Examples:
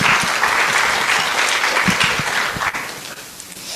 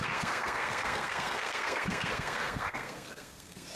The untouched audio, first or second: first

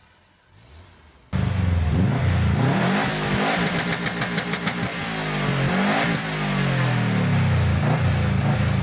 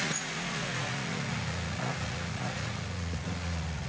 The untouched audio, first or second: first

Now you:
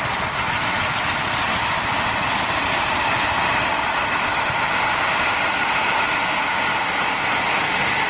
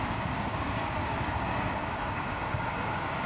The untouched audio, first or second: first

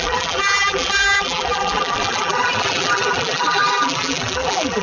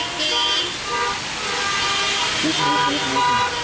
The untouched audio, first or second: second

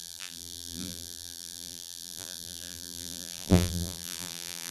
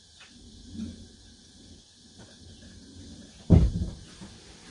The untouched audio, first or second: second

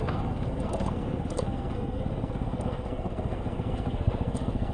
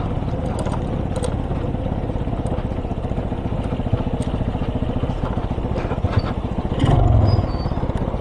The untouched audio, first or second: second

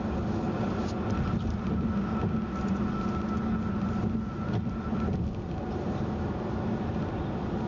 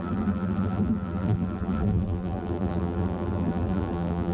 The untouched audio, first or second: first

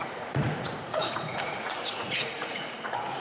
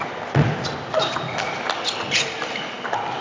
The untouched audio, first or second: second